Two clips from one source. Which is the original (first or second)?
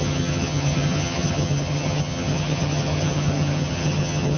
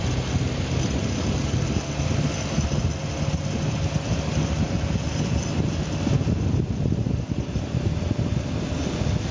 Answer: second